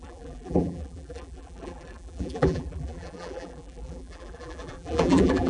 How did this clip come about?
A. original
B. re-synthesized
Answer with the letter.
B